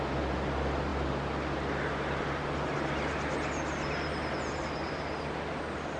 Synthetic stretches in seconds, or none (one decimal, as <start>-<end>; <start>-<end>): none